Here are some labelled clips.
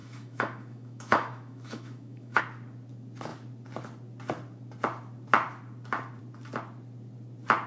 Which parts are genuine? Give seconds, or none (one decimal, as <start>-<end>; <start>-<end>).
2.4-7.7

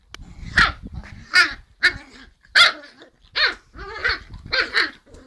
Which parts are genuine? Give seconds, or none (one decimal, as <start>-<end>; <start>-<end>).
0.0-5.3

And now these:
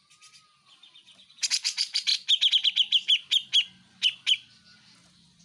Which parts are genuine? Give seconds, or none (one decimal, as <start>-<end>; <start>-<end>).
0.0-5.4

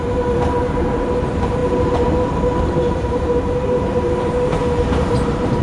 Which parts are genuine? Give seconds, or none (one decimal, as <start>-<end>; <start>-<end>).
none